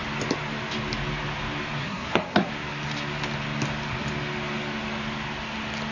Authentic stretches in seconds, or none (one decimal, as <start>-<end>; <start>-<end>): 0.0-1.8; 2.5-5.9